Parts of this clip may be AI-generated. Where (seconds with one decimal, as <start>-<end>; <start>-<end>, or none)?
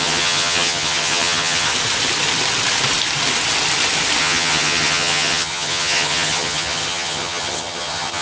0.0-1.7; 4.2-8.2